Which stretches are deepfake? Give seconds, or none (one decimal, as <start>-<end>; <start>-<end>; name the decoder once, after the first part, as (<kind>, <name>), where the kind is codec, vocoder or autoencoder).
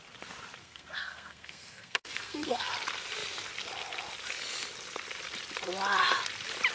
0.6-2.7 (codec, SNAC)